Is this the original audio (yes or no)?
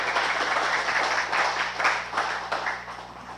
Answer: yes